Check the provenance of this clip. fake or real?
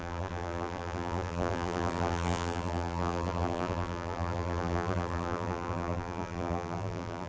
fake